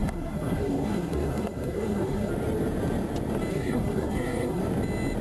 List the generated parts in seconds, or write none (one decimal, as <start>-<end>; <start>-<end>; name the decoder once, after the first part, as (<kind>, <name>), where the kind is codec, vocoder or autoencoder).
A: 0.0-2.3 (codec, SNAC); 3.5-4.6